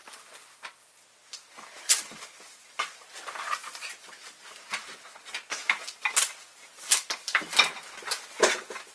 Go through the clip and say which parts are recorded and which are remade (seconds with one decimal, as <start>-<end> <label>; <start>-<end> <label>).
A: 0.0-8.9 recorded

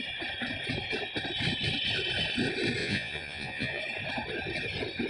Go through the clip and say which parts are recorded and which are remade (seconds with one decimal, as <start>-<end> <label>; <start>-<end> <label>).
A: 0.0-2.8 recorded; 2.8-3.8 remade; 3.8-5.1 recorded

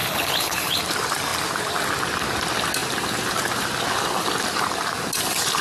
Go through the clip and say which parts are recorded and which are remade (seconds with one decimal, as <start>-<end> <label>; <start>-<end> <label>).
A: 0.0-0.8 remade; 0.8-5.6 recorded

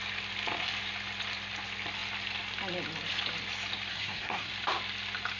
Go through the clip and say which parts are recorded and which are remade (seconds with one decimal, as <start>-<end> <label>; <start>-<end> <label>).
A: 0.0-3.9 recorded; 3.9-4.5 remade; 4.5-5.4 recorded